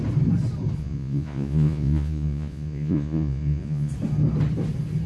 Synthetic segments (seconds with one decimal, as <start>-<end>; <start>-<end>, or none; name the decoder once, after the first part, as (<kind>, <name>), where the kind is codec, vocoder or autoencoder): 0.8-3.9 (vocoder, Vocos)